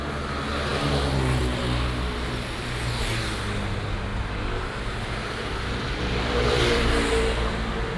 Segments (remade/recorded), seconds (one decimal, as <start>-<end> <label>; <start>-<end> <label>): 0.0-8.0 recorded